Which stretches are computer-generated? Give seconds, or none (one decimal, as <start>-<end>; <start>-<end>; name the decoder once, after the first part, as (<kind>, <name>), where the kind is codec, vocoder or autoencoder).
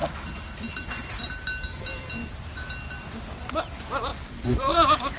none